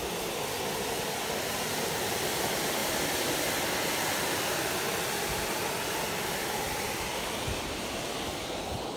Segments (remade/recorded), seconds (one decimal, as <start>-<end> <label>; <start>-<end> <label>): 0.0-9.0 recorded